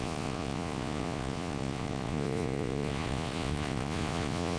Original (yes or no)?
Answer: no